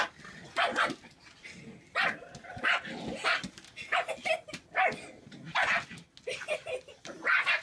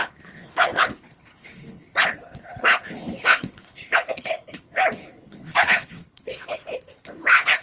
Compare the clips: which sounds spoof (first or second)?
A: second